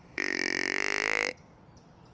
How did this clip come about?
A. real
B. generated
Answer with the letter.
A